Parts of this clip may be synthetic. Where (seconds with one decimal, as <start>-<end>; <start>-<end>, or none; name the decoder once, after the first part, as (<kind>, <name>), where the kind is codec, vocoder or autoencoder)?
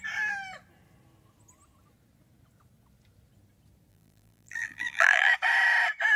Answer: 3.9-5.3 (vocoder, BigVGAN v2)